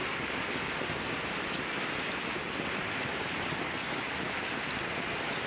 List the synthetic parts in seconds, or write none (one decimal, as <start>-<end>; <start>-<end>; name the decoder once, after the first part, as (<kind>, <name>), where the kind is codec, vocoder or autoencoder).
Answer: none